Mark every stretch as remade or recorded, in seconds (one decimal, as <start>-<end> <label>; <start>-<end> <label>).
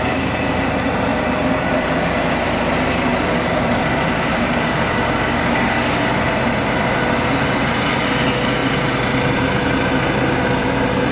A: 0.0-4.3 recorded; 4.3-6.1 remade; 6.1-11.1 recorded